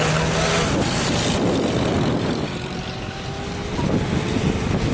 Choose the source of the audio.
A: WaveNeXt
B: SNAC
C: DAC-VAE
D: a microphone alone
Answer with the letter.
D